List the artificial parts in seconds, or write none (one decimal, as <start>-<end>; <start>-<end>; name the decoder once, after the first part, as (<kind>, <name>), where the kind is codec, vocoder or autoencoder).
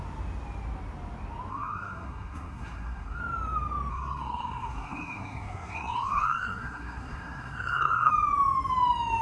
1.5-3.2 (codec, SNAC); 3.9-8.1